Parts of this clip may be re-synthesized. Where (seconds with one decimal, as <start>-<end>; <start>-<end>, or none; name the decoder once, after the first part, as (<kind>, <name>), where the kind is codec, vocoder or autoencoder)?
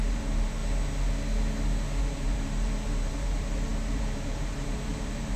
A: 0.0-0.6 (vocoder, BigVGAN v2); 2.0-5.4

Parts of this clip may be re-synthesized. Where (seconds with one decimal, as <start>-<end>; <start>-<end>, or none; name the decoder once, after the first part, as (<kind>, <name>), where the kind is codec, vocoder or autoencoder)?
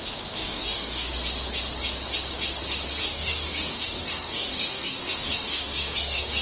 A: 0.4-1.1 (codec, DAC); 3.0-6.4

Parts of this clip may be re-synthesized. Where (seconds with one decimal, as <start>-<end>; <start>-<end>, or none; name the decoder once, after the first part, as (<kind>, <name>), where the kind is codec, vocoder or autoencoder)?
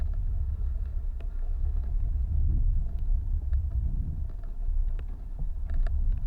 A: none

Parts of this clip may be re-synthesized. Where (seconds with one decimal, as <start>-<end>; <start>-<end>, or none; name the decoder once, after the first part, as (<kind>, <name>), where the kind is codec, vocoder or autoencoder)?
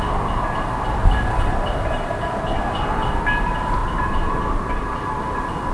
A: 1.0-2.4 (vocoder, BigVGAN v2); 3.8-5.2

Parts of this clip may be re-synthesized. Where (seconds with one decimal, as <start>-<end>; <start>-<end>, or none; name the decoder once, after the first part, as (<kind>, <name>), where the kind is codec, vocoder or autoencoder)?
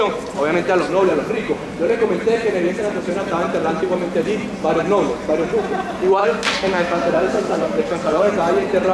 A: 6.2-8.3 (codec, SNAC)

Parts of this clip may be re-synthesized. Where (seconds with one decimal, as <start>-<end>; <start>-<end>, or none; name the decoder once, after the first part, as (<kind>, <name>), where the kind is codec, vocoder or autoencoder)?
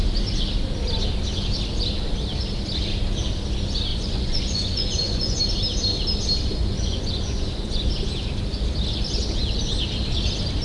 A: 3.9-5.4 (vocoder, Vocos); 6.6-7.9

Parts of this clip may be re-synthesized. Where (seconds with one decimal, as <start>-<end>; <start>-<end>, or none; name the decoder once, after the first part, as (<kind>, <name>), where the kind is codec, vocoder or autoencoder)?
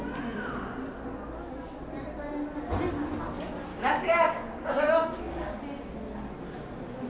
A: 3.7-5.6 (codec, DAC)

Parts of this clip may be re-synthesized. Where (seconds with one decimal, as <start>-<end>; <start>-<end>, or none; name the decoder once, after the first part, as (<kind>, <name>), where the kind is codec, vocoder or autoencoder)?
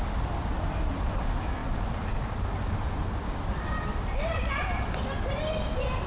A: none